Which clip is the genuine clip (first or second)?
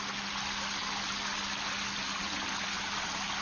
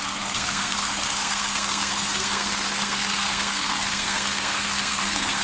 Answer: first